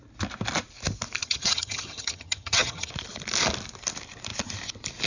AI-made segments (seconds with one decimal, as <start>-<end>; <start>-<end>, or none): 1.2-2.9